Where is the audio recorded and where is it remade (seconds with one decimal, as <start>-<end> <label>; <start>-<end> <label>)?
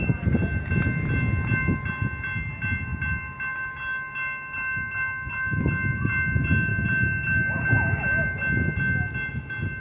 0.0-9.8 recorded